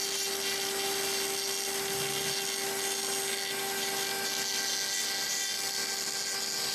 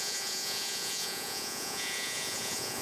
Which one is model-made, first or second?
second